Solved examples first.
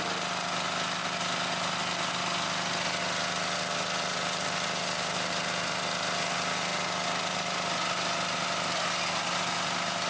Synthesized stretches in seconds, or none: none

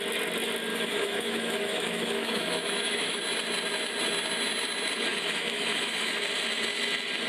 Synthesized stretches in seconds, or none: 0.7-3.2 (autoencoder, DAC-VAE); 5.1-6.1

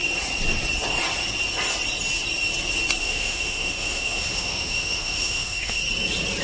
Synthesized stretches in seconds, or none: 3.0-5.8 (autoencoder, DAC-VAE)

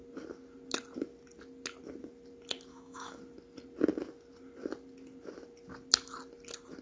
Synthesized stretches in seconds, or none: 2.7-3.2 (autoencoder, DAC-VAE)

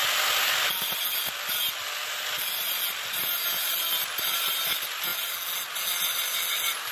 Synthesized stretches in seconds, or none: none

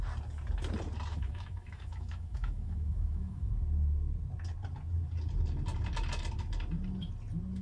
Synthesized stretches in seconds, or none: 1.1-3.5 (autoencoder, DAC-VAE)